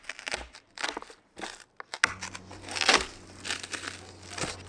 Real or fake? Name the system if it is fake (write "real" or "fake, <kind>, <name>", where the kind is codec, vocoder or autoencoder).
real